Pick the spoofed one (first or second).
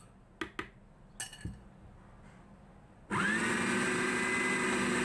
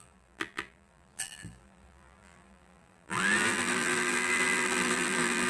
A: second